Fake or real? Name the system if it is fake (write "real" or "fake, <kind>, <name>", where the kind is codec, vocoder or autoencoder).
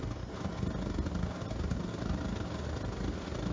real